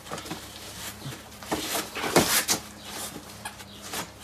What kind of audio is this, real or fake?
fake